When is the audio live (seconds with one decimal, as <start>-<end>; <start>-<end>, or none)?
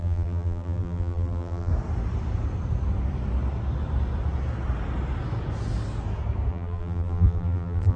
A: 1.7-6.5